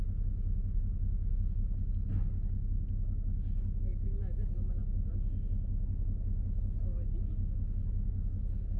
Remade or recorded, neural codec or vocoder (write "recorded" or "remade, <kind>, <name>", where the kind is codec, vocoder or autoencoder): recorded